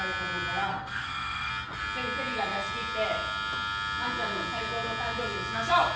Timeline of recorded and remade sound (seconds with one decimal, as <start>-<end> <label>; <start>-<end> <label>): 0.0-0.7 recorded; 0.7-1.5 remade; 1.5-6.0 recorded